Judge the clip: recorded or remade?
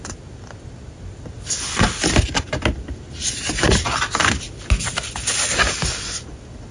recorded